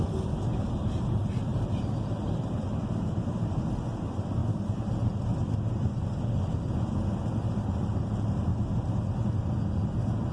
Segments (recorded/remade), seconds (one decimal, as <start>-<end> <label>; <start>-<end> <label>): 0.0-1.5 recorded; 1.5-3.0 remade; 3.0-4.4 recorded; 4.4-4.9 remade; 4.9-10.3 recorded